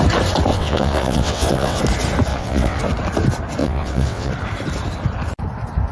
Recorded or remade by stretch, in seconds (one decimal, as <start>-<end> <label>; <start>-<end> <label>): 0.0-0.5 recorded; 0.5-1.8 remade; 1.8-2.3 recorded; 2.3-2.8 remade; 2.8-3.6 recorded; 3.6-4.3 remade; 4.3-5.9 recorded